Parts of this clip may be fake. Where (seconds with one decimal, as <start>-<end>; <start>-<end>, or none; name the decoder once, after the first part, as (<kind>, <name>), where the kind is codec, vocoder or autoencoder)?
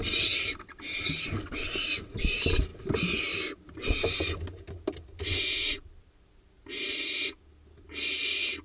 none